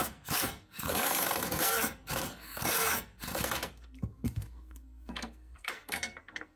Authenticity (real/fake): fake